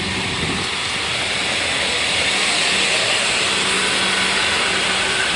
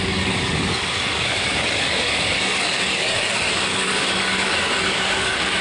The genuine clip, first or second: first